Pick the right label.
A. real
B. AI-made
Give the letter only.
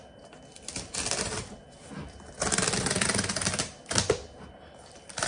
A